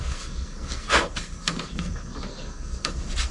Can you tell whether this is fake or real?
fake